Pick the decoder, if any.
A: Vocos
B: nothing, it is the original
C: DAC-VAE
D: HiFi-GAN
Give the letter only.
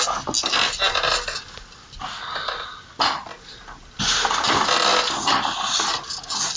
B